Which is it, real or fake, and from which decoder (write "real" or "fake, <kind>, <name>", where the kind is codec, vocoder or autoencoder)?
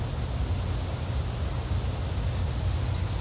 real